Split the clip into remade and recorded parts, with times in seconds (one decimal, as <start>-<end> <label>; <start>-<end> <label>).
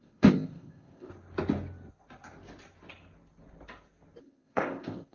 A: 0.0-1.1 remade; 1.1-4.2 recorded; 4.2-5.1 remade